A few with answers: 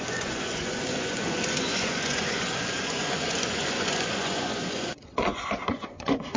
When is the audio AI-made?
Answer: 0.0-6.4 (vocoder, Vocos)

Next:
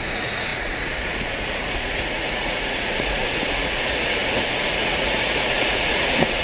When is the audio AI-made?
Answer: 0.0-6.4 (vocoder, Vocos)

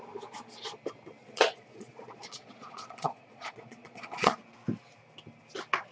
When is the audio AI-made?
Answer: 1.2-4.4 (vocoder, Vocos)

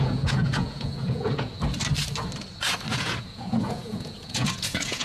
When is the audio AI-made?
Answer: 0.0-1.5 (vocoder, Vocos); 2.9-5.0

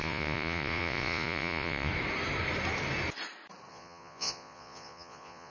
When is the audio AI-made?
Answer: 0.0-1.9 (vocoder, Vocos); 3.7-5.5

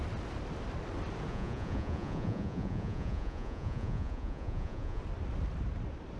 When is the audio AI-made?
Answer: 1.3-5.0 (vocoder, Vocos)

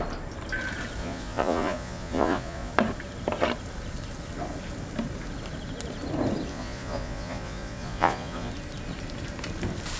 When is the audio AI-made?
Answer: 1.0-2.7 (vocoder, Vocos); 6.5-8.5

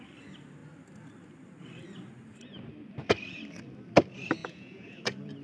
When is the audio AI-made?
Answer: 4.4-5.0 (vocoder, Vocos)